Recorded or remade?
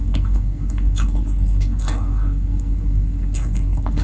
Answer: remade